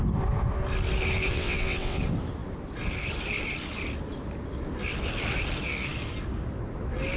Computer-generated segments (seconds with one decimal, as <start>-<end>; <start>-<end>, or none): 1.3-2.0